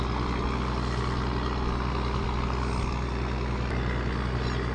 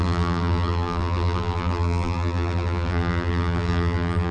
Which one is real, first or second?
first